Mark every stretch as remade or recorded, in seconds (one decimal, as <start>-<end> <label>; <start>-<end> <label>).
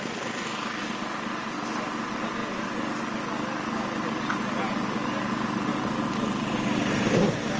0.0-7.6 recorded